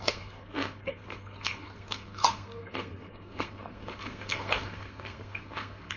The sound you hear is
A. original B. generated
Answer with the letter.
B